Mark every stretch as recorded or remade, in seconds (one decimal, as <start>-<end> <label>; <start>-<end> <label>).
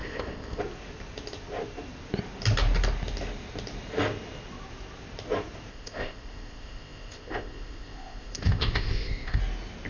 0.0-0.6 remade; 0.6-5.7 recorded; 5.7-9.4 remade; 9.4-9.9 recorded